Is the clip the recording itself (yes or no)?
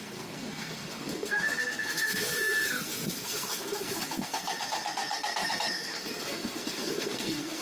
no